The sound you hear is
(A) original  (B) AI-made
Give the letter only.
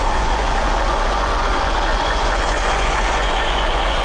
B